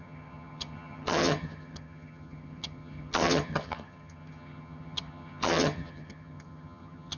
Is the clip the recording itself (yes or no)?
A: no